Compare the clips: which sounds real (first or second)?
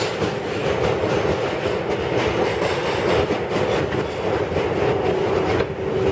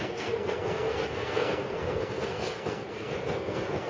first